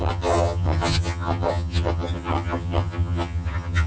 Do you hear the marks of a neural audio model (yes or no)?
yes